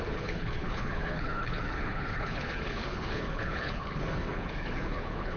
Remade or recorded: remade